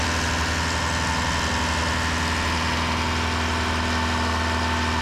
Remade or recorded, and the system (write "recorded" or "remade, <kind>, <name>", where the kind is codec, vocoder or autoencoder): recorded